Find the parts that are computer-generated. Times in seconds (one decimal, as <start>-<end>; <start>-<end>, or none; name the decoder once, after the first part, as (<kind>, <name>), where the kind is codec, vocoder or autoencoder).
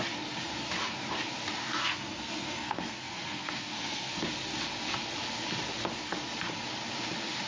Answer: 1.6-4.2 (codec, SNAC)